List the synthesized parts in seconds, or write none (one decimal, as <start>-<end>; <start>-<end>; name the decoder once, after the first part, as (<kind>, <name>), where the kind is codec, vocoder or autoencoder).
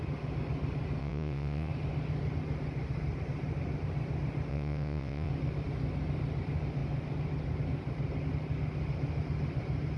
1.0-1.7 (vocoder, WaveNeXt); 4.5-5.3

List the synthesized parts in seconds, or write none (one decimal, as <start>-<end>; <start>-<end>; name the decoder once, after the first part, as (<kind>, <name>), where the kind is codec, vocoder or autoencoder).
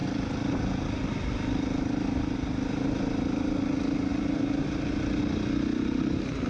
none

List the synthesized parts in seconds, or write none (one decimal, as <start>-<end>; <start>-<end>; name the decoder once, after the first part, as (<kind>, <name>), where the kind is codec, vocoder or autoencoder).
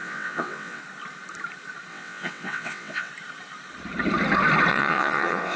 0.0-0.8 (vocoder, WaveNeXt); 1.9-3.1; 4.7-5.6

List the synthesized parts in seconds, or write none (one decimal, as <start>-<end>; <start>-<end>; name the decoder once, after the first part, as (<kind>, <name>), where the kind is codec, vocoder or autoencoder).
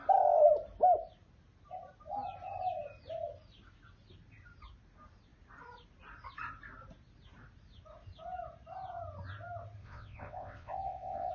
9.8-11.3 (vocoder, WaveNeXt)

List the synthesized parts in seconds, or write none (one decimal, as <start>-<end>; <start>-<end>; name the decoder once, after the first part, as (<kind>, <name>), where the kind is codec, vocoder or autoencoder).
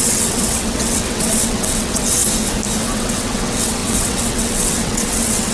0.0-2.2 (vocoder, WaveNeXt); 2.8-5.5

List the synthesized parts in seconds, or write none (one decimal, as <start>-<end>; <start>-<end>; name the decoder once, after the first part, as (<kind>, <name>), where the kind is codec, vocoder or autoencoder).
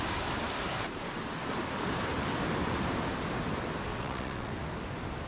3.9-4.5 (vocoder, WaveNeXt)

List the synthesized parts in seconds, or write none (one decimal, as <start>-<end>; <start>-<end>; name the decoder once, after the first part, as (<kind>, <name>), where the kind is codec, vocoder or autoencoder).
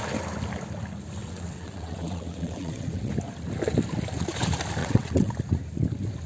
1.2-3.1 (vocoder, WaveNeXt); 4.8-5.3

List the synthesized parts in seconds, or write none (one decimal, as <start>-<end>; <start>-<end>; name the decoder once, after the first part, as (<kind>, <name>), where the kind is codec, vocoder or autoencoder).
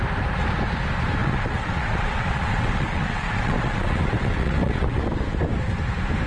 1.2-5.0 (vocoder, WaveNeXt)